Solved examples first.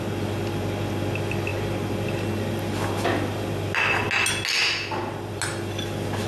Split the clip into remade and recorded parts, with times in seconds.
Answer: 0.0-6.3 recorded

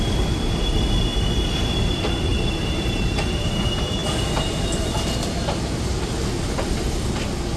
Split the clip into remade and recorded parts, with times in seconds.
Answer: 0.0-7.6 recorded